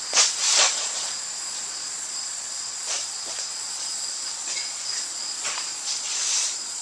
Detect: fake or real fake